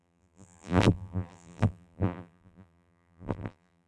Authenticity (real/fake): fake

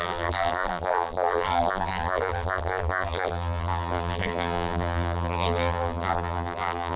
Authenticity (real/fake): fake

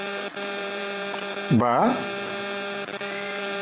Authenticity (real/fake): fake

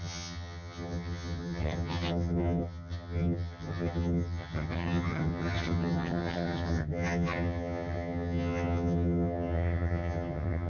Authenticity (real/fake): fake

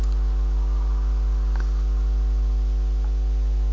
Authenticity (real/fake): real